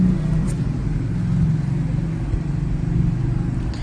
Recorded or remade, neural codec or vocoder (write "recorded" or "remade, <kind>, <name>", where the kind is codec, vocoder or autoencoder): recorded